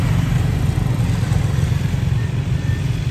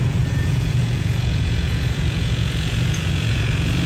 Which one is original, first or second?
first